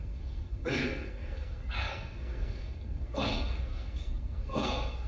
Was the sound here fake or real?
fake